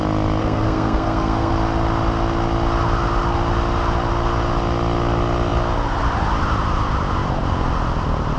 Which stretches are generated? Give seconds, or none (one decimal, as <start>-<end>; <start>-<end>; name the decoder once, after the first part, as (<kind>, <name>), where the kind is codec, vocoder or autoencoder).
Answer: 0.4-1.5 (codec, SNAC)